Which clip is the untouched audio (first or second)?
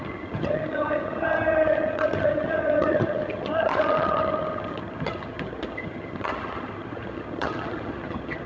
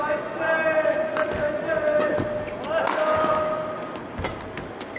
second